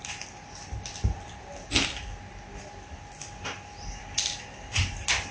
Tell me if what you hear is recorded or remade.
recorded